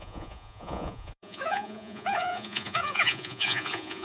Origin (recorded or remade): remade